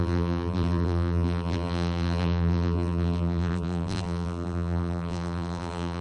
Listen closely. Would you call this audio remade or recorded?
remade